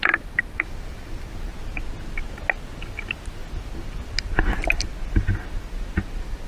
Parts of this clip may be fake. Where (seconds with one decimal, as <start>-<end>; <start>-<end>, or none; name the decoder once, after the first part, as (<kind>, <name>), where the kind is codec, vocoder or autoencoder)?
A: 0.0-1.5 (vocoder, BigVGAN v2); 4.1-4.9; 6.1-6.5